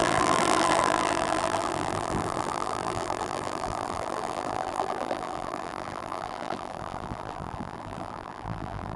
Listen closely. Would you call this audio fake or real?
fake